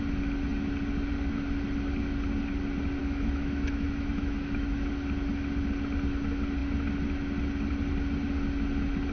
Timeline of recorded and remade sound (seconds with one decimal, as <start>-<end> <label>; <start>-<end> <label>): 0.0-3.0 recorded; 3.0-4.9 remade; 4.9-9.1 recorded